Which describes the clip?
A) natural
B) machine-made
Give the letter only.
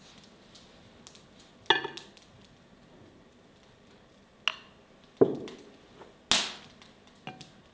A